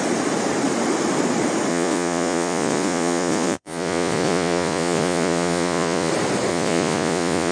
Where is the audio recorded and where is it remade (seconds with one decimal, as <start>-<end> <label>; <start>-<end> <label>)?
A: 0.0-1.7 recorded; 1.7-6.1 remade; 6.1-6.5 recorded; 6.5-7.5 remade